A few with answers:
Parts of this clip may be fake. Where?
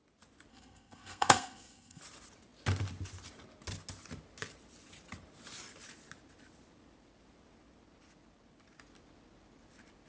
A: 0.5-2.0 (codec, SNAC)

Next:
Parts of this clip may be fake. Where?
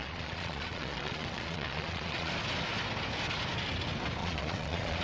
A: 0.0-2.3 (vocoder, Vocos); 4.2-5.0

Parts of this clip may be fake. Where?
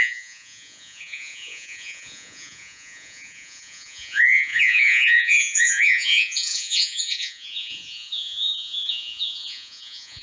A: 0.0-10.2 (vocoder, Vocos)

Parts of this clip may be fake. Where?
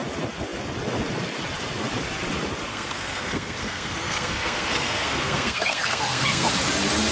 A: 2.7-6.5 (codec, SNAC)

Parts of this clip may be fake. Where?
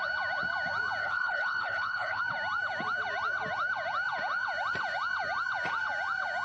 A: 1.0-2.2 (codec, HILCodec)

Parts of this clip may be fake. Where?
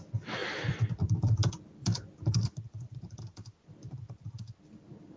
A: none